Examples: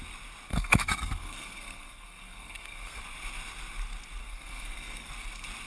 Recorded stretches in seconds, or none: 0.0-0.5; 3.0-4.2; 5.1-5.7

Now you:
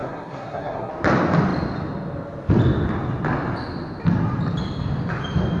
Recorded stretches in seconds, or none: 0.9-5.6

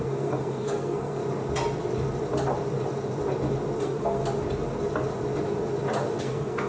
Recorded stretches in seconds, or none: 1.2-3.8; 4.2-6.2

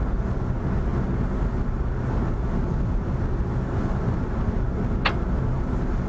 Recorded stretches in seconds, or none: 0.0-6.1

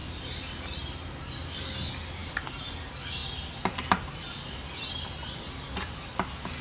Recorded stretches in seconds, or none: 0.0-6.6

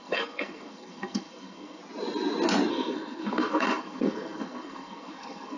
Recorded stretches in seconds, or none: 1.8-2.7